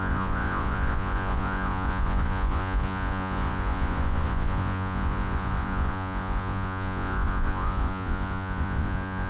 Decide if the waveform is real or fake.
fake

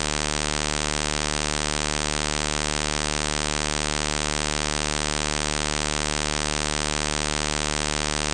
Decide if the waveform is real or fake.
real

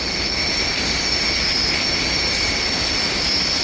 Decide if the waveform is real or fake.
real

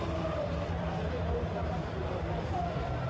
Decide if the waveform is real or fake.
fake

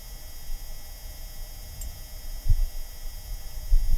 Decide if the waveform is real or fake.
real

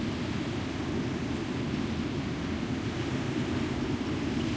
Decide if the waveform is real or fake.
real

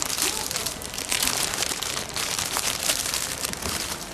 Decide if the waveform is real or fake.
fake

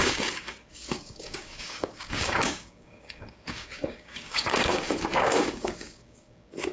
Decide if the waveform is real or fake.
fake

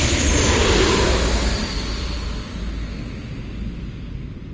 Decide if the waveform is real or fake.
real